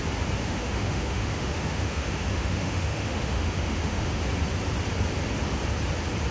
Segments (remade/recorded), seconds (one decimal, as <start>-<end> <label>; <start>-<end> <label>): 0.0-0.4 recorded; 0.4-4.2 remade; 4.2-6.3 recorded